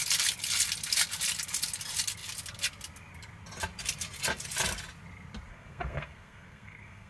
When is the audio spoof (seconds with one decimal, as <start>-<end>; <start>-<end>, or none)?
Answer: 5.5-7.1